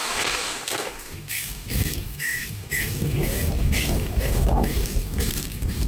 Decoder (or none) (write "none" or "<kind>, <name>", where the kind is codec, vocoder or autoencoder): codec, DAC